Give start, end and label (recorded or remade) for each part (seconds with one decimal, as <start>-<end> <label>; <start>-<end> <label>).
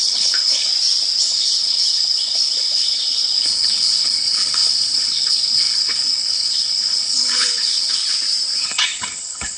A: 0.0-0.7 remade; 0.7-1.2 recorded; 1.2-8.0 remade; 8.0-8.6 recorded; 8.6-9.6 remade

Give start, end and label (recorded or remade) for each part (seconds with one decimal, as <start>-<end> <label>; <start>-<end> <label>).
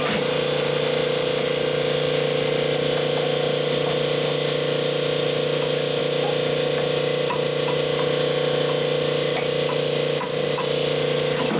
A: 0.0-11.6 recorded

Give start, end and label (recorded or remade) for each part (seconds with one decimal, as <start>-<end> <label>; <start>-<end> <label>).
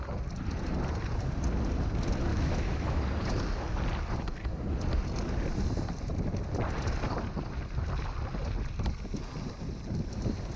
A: 0.0-2.3 recorded; 2.3-3.0 remade; 3.0-10.6 recorded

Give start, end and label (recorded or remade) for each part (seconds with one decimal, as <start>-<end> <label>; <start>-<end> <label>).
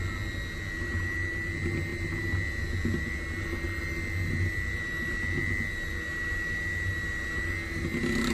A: 0.0-8.3 recorded